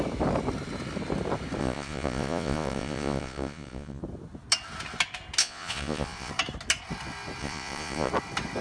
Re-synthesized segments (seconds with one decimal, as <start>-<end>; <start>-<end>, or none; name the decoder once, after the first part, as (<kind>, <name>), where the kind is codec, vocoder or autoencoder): 1.6-4.0 (vocoder, Vocos); 5.4-6.3; 7.4-8.1

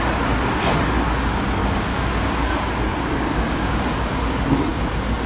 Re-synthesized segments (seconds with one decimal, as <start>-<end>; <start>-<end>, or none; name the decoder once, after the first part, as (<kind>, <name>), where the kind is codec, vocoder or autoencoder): 1.6-2.3 (codec, DAC); 2.9-3.9